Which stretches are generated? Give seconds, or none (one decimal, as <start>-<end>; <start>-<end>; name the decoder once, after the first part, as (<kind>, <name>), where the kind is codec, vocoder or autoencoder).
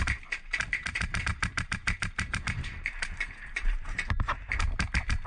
1.3-4.5 (vocoder, BigVGAN v2)